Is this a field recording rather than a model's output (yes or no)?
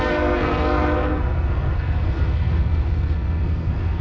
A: no